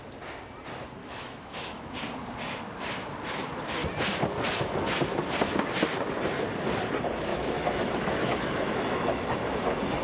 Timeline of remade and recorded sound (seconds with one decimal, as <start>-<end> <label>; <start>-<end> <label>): 0.0-1.0 recorded; 1.0-1.9 remade; 1.9-7.3 recorded; 7.3-9.2 remade; 9.2-10.0 recorded